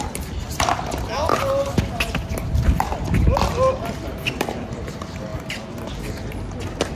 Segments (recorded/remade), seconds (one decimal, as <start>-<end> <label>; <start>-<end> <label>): 0.0-6.9 recorded